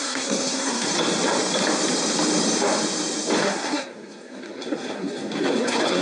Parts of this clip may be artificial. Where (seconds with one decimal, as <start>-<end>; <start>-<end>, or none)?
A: 0.0-0.9; 3.4-6.0